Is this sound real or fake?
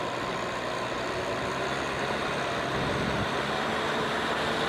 real